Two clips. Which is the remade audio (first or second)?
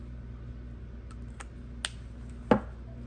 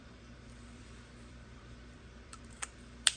second